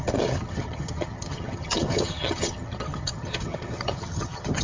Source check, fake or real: fake